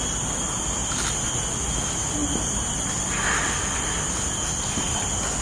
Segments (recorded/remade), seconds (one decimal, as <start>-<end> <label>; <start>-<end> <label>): 0.0-5.4 recorded